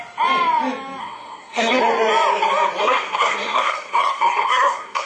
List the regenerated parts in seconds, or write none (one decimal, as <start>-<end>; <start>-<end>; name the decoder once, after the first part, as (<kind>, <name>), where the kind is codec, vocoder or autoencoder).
1.0-1.8 (codec, SNAC); 2.8-5.1